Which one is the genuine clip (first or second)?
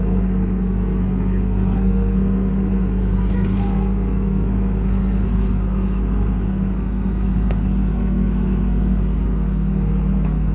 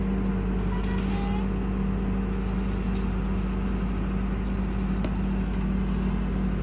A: second